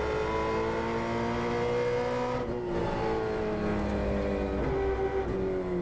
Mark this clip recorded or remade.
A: recorded